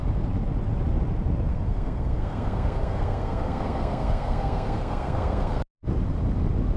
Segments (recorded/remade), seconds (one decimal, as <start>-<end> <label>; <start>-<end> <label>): 0.0-1.5 recorded; 1.5-5.6 remade; 5.6-6.8 recorded